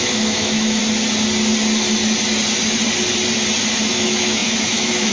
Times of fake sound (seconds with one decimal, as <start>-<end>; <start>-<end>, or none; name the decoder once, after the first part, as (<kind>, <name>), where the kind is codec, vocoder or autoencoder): 0.0-0.8 (autoencoder, DAC-VAE); 3.9-5.1